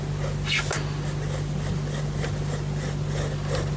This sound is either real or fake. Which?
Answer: real